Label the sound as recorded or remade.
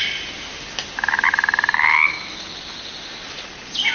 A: recorded